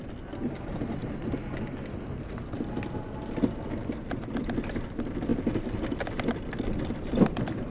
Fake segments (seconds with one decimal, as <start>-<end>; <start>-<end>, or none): none